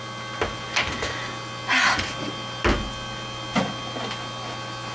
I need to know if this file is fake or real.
real